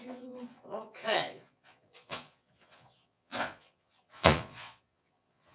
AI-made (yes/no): yes